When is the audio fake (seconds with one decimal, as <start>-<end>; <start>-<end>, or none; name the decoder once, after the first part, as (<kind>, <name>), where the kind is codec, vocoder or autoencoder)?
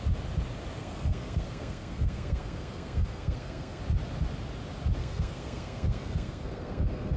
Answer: 0.8-3.8 (codec, SNAC); 5.0-7.2